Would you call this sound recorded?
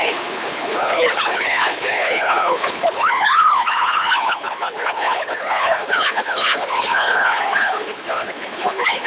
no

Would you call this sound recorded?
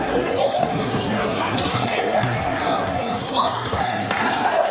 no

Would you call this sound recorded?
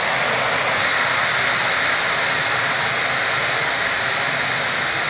yes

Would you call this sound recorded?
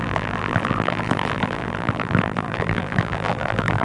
no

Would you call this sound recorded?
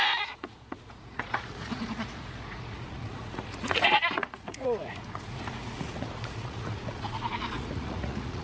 no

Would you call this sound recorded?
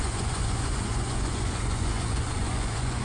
no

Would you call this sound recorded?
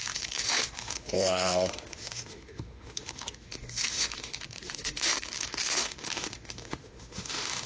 no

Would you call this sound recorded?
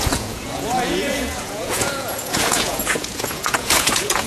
no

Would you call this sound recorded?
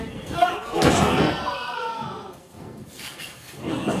no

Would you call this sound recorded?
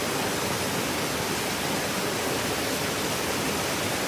yes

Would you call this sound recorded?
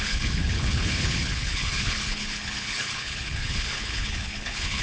no